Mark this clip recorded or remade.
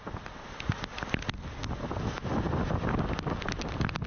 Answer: recorded